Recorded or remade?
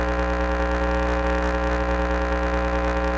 recorded